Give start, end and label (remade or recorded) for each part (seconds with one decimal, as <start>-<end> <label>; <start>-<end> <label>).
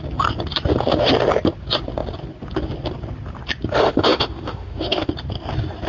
0.0-3.8 recorded; 3.8-5.1 remade; 5.1-5.9 recorded